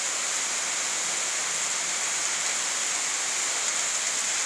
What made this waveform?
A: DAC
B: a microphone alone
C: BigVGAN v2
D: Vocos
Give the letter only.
B